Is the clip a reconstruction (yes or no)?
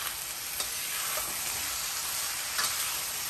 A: no